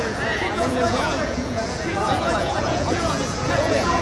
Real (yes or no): no